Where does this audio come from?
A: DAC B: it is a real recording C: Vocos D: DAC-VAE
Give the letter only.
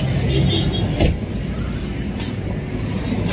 B